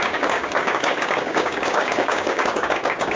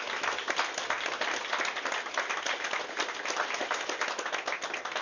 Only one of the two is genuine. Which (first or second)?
second